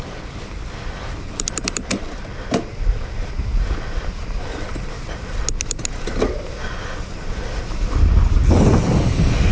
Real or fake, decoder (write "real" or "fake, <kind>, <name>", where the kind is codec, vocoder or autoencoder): real